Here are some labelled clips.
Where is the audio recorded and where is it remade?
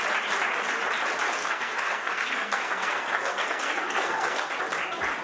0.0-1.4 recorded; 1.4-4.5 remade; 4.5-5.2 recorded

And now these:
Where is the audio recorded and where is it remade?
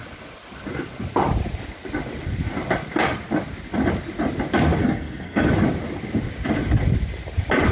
0.0-4.8 recorded; 4.8-5.5 remade; 5.5-7.7 recorded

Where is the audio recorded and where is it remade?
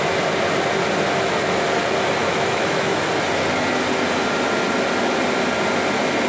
0.0-2.2 recorded; 2.2-3.0 remade; 3.0-6.3 recorded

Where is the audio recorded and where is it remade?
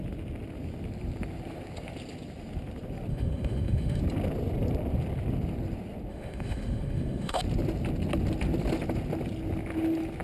0.0-3.1 recorded; 3.1-4.0 remade; 4.0-6.1 recorded; 6.1-7.4 remade; 7.4-10.2 recorded